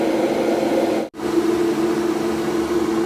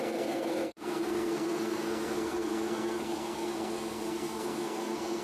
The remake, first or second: second